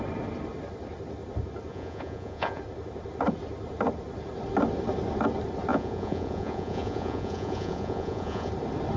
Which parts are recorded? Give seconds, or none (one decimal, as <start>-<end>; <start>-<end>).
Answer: 0.0-1.7; 2.6-5.7; 8.5-9.0

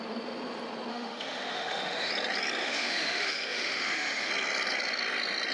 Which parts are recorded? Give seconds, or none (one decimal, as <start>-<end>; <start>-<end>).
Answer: 0.0-0.9; 2.1-2.6; 4.3-5.5

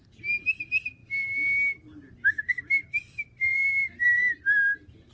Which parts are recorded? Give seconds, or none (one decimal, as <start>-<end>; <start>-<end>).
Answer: 0.0-5.1

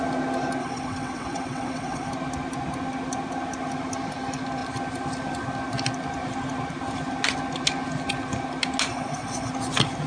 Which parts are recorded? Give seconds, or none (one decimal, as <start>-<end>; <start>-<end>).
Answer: 0.0-0.6; 2.1-8.9; 9.5-10.1

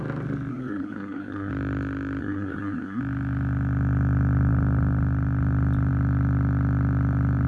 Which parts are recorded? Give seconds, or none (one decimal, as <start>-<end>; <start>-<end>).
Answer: 0.0-0.5; 1.5-2.2; 3.0-7.5